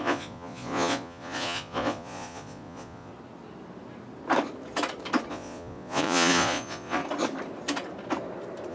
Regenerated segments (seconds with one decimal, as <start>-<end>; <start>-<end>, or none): 0.0-3.1; 5.3-7.0